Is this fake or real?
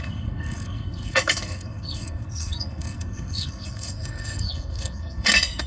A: fake